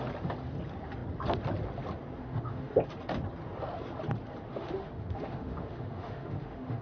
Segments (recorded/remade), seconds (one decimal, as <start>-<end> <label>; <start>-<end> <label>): 0.0-2.2 recorded; 2.2-2.7 remade; 2.7-4.5 recorded; 4.5-6.8 remade